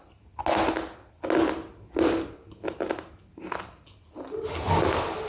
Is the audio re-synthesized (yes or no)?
no